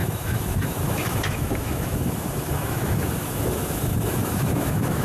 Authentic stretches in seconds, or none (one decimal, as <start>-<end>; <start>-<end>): none